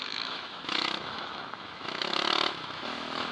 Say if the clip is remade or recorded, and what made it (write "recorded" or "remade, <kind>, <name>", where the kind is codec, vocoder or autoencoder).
remade, autoencoder, DAC-VAE